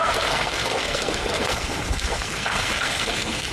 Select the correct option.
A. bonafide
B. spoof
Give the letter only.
B